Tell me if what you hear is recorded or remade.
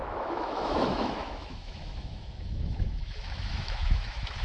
remade